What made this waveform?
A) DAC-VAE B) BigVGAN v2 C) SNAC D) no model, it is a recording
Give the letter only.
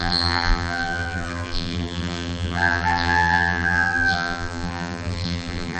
B